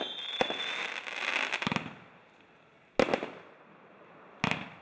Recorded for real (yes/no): yes